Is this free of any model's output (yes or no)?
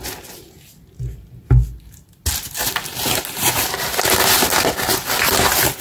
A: yes